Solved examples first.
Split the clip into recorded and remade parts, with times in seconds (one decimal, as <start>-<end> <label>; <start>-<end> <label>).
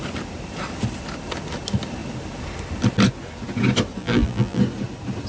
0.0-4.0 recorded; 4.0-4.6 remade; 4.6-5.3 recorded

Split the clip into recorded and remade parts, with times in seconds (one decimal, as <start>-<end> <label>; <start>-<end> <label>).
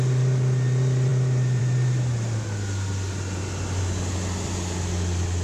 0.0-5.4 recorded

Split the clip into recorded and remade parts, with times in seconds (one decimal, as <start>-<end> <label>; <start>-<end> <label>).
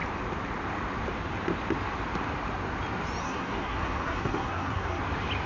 0.0-3.2 recorded; 3.2-5.0 remade; 5.0-5.5 recorded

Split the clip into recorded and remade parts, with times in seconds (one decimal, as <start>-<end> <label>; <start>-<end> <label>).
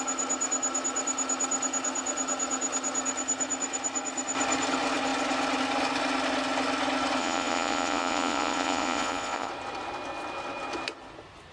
0.0-7.2 recorded; 7.2-9.5 remade; 9.5-11.5 recorded